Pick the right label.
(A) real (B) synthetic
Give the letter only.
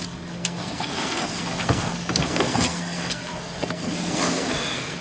B